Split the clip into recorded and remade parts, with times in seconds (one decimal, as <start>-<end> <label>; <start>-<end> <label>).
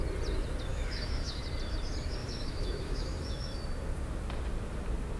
0.0-0.7 recorded; 0.7-1.4 remade; 1.4-2.2 recorded; 2.2-3.6 remade; 3.6-5.2 recorded